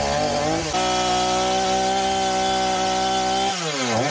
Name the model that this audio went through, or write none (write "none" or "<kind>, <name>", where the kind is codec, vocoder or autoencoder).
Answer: none